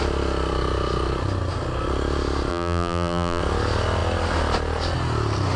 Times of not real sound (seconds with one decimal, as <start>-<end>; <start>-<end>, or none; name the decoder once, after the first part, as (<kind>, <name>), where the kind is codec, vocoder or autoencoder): 2.5-3.4 (vocoder, BigVGAN v2)